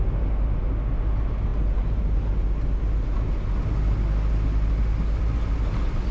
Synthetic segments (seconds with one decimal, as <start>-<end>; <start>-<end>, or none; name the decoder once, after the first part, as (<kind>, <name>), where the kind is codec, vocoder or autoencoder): none